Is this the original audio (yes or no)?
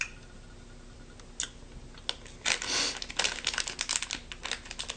yes